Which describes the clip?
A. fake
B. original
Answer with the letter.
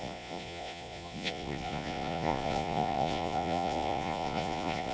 A